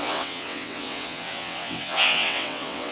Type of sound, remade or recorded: remade